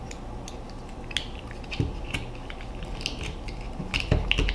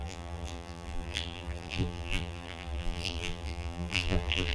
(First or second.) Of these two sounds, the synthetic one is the second